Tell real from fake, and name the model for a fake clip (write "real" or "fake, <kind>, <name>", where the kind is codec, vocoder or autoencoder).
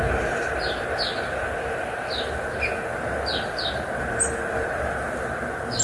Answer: real